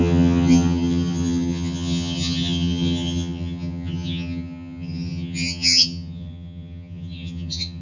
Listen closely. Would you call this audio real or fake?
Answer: fake